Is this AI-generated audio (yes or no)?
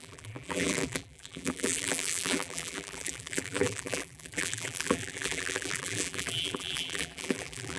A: yes